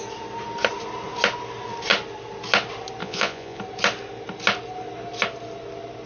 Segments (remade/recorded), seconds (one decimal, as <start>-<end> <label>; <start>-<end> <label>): 0.0-3.0 recorded; 3.0-3.6 remade; 3.6-6.1 recorded